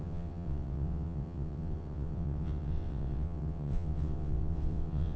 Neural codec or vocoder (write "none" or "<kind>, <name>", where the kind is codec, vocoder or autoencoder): vocoder, WaveNeXt